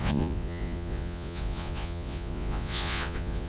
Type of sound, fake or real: fake